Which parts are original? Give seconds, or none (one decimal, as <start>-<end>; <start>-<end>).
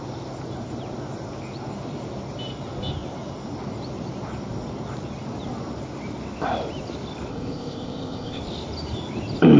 0.0-7.3; 8.4-9.6